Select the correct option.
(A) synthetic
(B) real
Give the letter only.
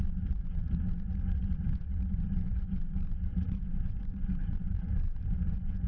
A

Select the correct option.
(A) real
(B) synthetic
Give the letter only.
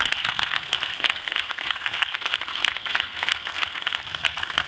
B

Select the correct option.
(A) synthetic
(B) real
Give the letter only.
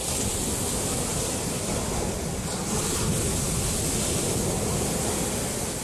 B